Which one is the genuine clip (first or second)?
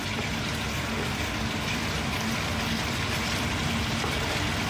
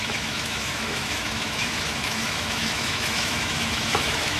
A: first